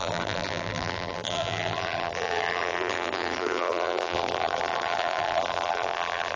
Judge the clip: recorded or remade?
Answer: remade